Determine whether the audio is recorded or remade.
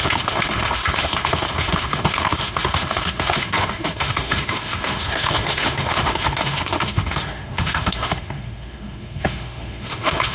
remade